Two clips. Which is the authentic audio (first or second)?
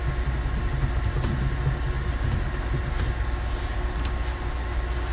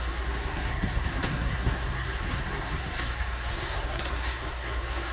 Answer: first